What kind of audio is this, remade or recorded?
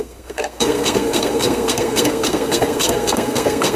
remade